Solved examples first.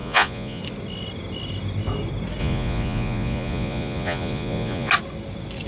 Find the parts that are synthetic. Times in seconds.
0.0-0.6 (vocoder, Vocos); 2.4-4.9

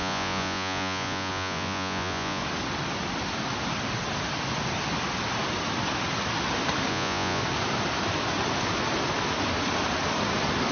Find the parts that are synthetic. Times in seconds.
0.0-2.4 (vocoder, Vocos); 6.9-7.4

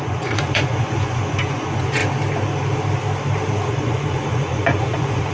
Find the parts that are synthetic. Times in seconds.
0.0-2.0 (vocoder, Vocos); 3.7-5.3

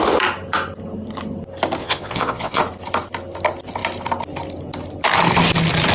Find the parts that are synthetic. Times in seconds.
1.8-2.6 (vocoder, Vocos)